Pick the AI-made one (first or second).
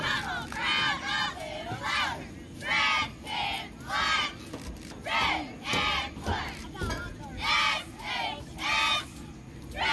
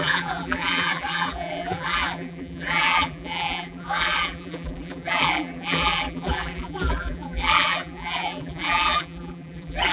second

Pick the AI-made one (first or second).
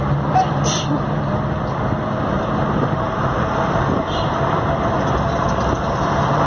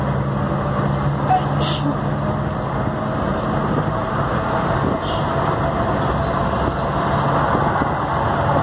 first